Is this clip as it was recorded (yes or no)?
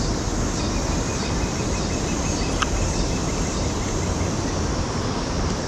yes